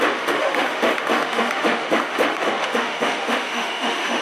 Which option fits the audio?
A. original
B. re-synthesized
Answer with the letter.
B